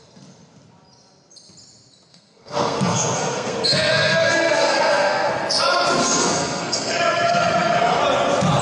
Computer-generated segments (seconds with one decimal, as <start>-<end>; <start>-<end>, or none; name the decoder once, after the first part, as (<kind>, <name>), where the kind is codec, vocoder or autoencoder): 2.1-5.3 (codec, SNAC); 6.0-8.0